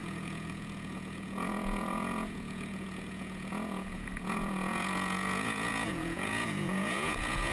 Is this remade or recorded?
remade